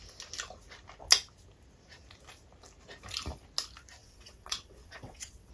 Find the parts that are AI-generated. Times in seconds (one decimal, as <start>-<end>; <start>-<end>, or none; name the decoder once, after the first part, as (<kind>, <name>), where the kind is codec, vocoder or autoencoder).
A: 4.0-5.5 (vocoder, WaveNeXt)